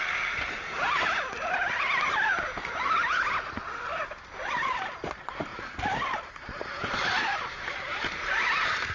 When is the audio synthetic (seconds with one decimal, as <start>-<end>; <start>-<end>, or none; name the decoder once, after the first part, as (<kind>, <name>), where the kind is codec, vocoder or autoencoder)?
none